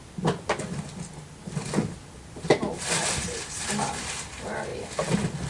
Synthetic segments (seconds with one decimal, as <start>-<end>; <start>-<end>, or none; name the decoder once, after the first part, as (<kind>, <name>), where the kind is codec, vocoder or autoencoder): none